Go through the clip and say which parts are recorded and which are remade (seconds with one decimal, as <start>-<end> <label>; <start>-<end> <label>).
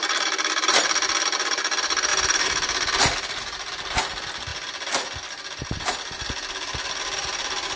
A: 0.0-0.8 remade; 0.8-2.1 recorded; 2.1-3.4 remade; 3.4-7.8 recorded